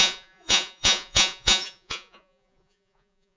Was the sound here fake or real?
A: fake